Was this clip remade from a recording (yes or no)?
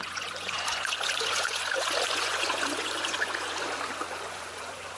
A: yes